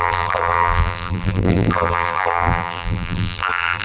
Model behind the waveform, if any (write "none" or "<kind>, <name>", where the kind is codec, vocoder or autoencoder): vocoder, BigVGAN v2